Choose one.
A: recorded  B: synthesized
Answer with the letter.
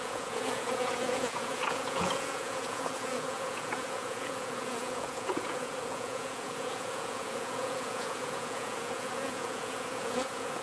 B